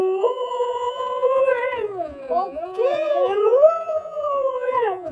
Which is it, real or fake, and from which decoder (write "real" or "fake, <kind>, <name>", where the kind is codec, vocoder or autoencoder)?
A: fake, vocoder, Vocos